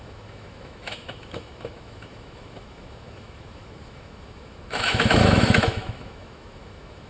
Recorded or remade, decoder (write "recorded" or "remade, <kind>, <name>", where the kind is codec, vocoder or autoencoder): remade, autoencoder, DAC-VAE